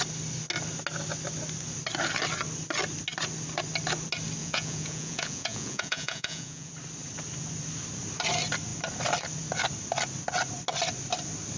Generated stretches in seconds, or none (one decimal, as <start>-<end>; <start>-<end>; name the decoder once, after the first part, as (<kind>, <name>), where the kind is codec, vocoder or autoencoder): 4.4-6.7 (vocoder, Vocos)